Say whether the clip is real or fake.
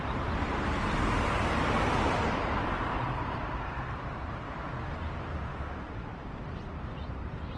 fake